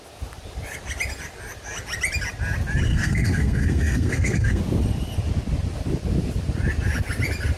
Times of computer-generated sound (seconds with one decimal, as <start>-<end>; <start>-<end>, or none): 2.9-4.6